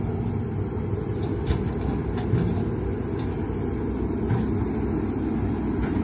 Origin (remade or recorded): recorded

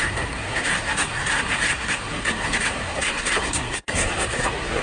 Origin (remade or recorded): remade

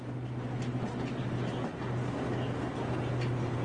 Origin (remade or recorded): recorded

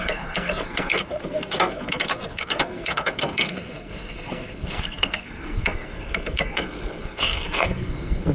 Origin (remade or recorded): remade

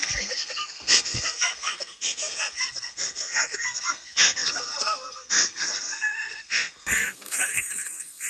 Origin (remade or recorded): remade